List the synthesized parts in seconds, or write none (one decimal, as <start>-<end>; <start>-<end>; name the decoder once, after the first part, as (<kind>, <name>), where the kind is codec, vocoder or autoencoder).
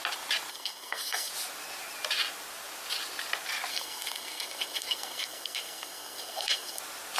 0.5-1.3 (codec, SNAC); 3.7-6.8